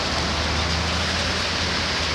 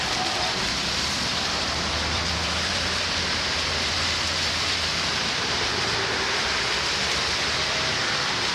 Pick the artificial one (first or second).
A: second